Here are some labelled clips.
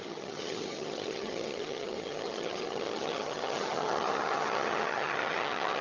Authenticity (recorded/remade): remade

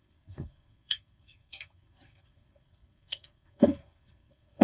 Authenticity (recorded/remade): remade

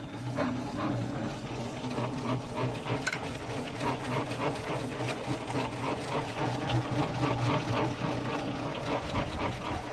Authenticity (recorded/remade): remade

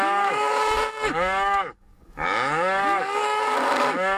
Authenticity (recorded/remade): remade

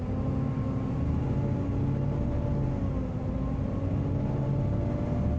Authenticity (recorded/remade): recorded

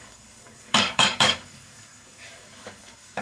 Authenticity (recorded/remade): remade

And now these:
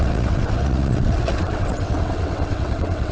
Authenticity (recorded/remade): remade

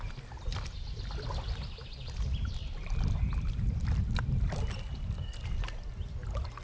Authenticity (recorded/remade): recorded